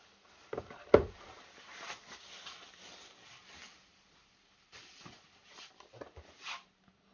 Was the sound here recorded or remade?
recorded